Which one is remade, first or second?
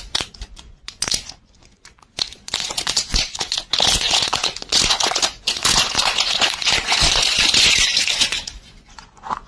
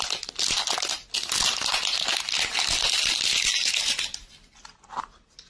first